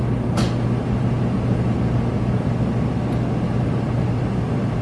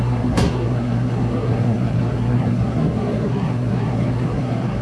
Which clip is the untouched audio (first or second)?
first